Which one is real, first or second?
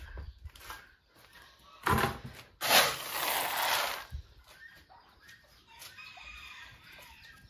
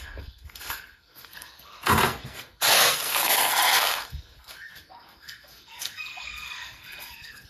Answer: first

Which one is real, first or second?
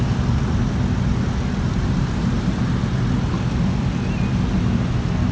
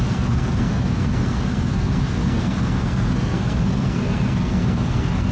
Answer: first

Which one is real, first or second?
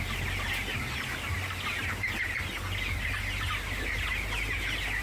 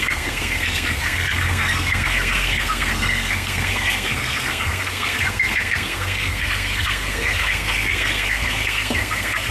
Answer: first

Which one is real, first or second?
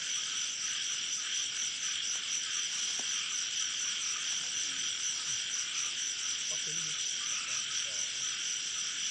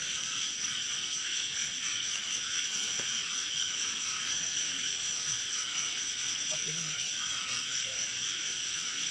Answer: first